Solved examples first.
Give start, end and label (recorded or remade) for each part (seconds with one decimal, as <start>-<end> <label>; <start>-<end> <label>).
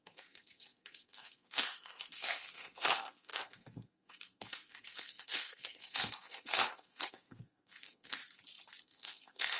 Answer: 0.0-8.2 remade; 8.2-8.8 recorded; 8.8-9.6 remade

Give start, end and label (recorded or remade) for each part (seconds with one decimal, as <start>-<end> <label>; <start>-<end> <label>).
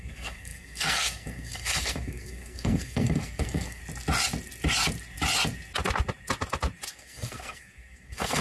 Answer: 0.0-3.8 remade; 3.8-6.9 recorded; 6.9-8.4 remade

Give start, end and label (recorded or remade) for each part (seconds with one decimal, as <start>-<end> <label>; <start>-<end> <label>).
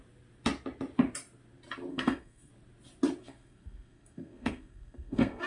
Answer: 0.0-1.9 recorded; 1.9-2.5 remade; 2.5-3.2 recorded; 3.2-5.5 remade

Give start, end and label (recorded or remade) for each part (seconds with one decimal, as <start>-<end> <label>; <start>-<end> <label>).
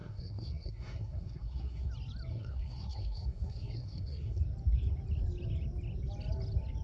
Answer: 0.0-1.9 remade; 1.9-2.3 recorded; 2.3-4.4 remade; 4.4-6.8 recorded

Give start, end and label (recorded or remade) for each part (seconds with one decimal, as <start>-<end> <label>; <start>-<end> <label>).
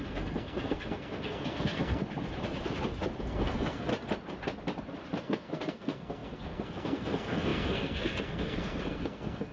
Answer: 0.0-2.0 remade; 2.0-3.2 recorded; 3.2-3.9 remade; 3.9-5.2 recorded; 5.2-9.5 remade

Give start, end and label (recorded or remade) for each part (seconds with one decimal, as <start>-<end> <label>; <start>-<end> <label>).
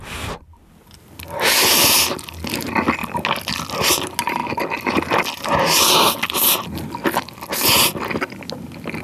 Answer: 0.0-9.0 recorded